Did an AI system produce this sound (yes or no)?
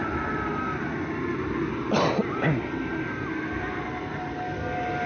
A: no